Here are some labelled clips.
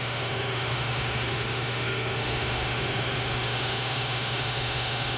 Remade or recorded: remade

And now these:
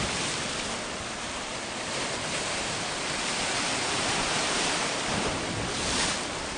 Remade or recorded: remade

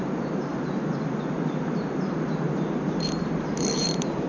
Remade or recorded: remade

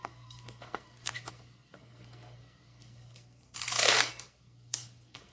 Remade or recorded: remade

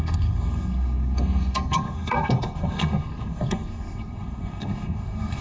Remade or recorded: remade